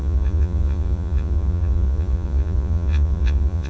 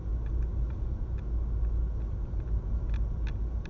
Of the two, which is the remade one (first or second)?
first